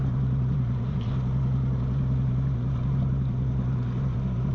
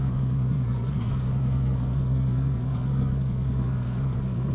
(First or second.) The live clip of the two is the first